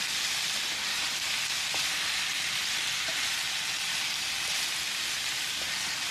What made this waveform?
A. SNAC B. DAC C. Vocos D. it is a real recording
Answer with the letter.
D